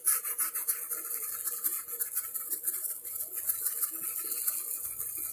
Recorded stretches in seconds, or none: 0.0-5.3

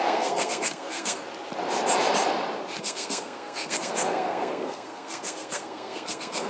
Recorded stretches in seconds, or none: 1.2-2.8

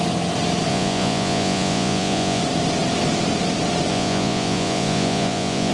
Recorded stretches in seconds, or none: 0.0-0.7; 2.4-3.9